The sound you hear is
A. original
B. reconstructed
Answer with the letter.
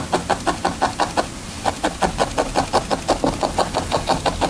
A